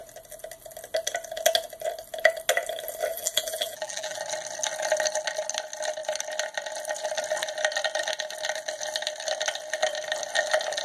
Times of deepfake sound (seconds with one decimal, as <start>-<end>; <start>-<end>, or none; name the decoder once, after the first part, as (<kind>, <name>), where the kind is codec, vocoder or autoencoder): 3.1-4.2 (vocoder, BigVGAN v2)